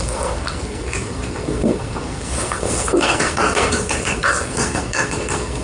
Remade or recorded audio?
remade